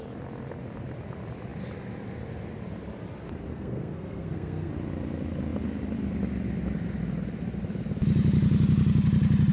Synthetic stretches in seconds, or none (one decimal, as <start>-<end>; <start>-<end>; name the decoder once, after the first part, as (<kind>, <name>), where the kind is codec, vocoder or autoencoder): 3.5-4.7 (codec, SNAC)